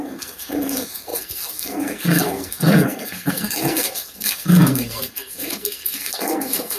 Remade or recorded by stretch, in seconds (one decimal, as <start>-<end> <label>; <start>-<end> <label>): 0.0-6.8 remade